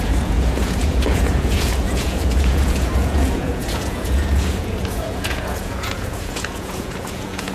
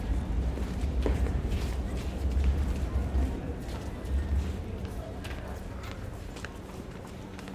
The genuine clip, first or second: second